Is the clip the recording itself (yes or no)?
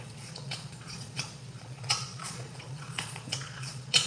no